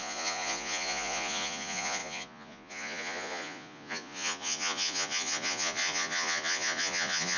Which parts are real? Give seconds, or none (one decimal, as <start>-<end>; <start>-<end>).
none